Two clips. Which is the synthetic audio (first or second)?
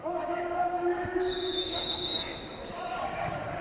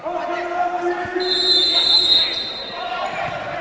first